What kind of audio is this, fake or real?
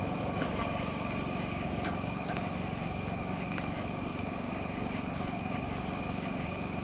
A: fake